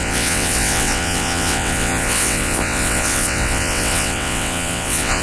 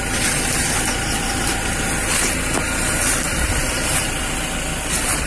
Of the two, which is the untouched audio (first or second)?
second